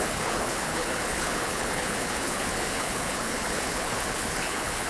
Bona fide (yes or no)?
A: no